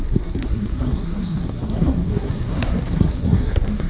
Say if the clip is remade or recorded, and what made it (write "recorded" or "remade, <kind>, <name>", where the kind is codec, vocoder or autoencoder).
remade, codec, SNAC